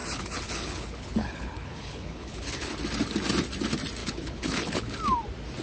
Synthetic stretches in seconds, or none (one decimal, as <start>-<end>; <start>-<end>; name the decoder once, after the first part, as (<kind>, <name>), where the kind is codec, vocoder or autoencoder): 0.0-2.7 (codec, HILCodec); 4.0-5.0